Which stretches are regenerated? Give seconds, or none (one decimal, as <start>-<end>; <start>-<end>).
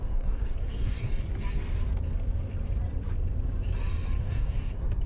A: 0.0-1.1; 4.2-5.1